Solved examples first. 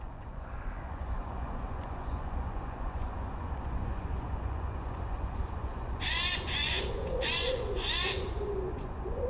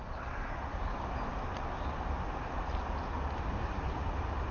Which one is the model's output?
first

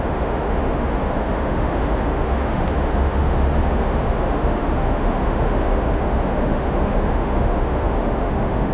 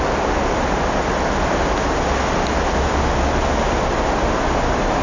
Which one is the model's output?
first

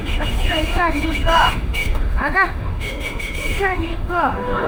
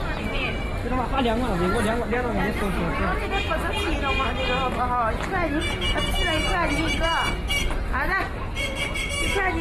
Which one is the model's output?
first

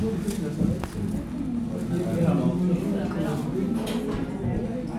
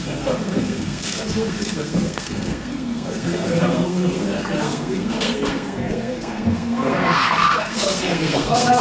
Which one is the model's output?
second